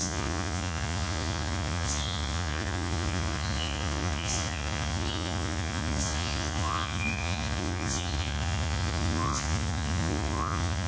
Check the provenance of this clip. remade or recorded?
remade